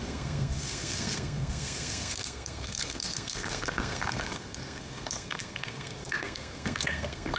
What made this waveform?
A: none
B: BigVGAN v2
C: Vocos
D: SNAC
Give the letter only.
D